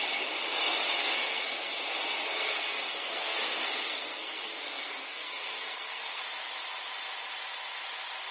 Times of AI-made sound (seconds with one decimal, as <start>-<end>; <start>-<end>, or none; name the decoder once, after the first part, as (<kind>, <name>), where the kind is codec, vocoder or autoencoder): 1.0-1.7 (codec, SNAC); 2.2-6.2